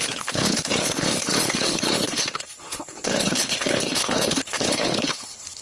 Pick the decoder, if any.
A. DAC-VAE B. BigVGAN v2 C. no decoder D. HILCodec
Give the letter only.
D